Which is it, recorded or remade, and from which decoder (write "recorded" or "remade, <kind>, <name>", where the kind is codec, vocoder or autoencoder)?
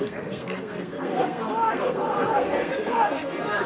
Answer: remade, codec, SNAC